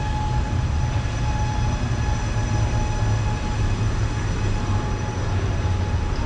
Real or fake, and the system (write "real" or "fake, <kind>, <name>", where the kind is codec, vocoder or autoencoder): real